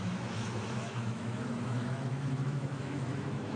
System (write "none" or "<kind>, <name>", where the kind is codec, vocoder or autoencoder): autoencoder, DAC-VAE